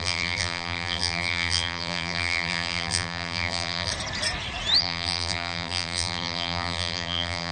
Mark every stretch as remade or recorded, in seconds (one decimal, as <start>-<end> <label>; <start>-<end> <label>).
0.0-3.9 remade; 3.9-4.8 recorded; 4.8-7.5 remade